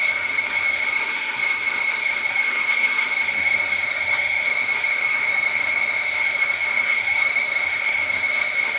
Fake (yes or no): yes